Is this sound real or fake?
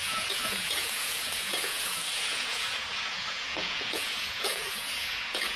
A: fake